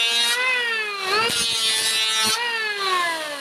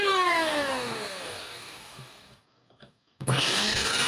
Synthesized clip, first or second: second